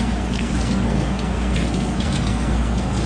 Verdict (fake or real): fake